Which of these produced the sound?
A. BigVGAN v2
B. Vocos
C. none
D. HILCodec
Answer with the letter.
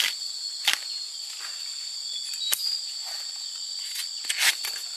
C